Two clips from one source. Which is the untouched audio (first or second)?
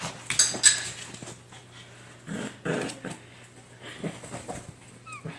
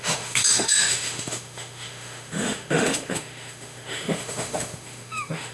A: first